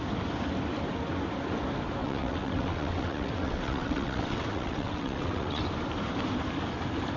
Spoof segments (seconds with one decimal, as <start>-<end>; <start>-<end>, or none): 2.0-5.6